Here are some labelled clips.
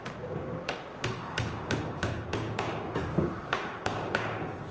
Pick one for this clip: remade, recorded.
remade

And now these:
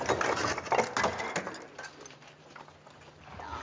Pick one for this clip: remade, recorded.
recorded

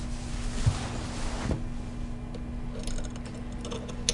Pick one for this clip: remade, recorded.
recorded